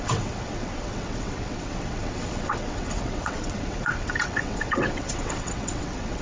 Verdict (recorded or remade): remade